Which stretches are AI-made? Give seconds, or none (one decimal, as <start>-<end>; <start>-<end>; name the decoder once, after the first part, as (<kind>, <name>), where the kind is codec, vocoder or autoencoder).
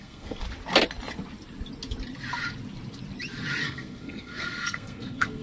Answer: 0.0-0.4 (codec, SNAC); 3.6-5.4